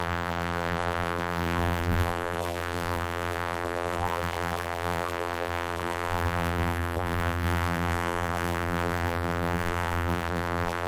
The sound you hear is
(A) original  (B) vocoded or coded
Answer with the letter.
B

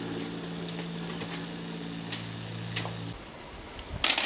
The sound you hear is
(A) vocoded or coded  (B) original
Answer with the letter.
B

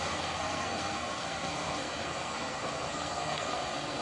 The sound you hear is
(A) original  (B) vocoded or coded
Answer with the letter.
B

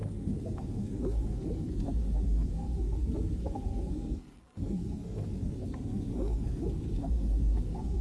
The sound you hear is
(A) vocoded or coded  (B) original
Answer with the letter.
A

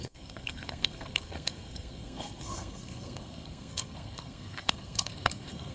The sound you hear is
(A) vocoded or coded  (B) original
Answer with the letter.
A